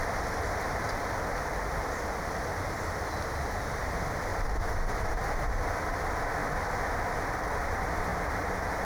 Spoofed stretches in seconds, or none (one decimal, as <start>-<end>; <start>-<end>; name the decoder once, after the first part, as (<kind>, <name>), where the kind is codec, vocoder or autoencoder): 4.3-5.5 (vocoder, BigVGAN v2)